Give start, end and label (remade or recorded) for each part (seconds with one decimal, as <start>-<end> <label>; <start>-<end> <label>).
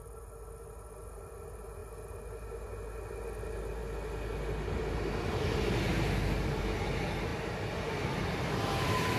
0.0-9.2 recorded